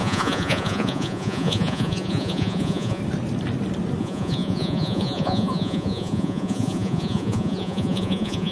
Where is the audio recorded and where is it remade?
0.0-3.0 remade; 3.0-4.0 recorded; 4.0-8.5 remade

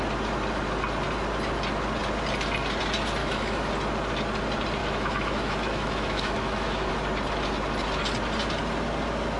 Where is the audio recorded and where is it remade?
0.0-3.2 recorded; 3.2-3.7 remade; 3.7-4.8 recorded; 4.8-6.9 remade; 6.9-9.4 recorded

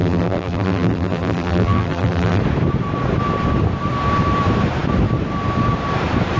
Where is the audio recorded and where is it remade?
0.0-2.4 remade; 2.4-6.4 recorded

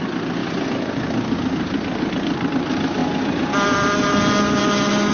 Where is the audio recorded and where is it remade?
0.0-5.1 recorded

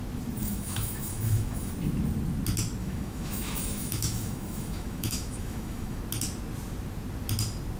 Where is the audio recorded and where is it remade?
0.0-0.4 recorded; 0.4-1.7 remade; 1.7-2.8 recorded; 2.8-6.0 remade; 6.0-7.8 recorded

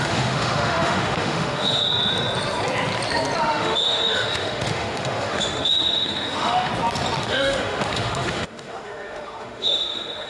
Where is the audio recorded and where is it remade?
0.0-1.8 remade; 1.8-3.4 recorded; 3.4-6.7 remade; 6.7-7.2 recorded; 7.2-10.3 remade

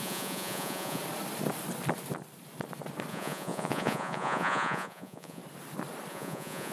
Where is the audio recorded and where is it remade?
0.0-1.0 remade; 1.0-3.1 recorded; 3.1-5.4 remade; 5.4-6.1 recorded; 6.1-6.7 remade